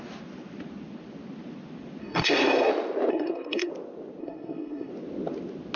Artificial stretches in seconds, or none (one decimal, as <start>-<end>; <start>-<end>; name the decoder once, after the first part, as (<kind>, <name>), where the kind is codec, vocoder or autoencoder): 2.0-2.7 (codec, SNAC); 3.1-3.7; 4.2-4.9